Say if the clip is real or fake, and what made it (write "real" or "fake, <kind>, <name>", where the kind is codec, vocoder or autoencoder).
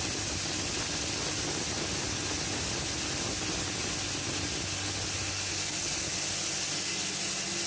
real